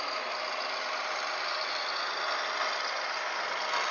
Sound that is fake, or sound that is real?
real